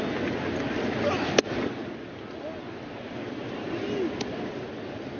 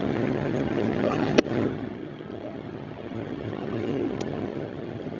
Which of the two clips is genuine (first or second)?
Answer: first